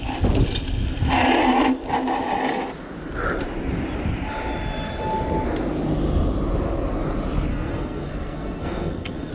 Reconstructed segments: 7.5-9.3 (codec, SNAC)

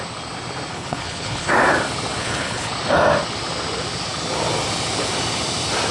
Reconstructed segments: 0.7-1.5 (codec, HILCodec); 2.2-2.7

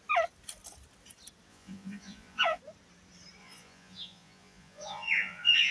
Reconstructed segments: 1.5-2.6 (vocoder, Vocos); 3.4-5.7

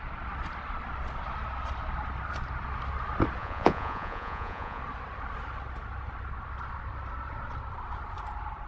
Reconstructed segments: 3.4-4.8 (vocoder, Vocos)